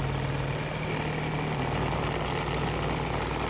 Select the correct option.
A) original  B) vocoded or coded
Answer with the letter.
A